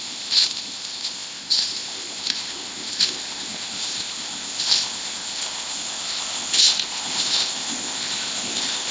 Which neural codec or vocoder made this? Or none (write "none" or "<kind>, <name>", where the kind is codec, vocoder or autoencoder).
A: codec, ZipCodec